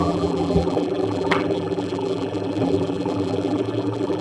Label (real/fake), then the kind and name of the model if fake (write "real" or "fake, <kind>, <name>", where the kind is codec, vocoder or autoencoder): fake, vocoder, BigVGAN v2